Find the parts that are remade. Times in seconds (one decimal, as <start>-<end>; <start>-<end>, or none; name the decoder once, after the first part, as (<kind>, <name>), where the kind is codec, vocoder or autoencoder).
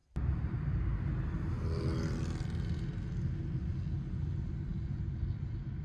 none